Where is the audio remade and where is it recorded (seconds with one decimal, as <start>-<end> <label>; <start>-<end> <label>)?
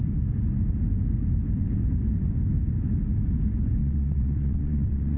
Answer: 0.0-3.8 recorded; 3.8-5.2 remade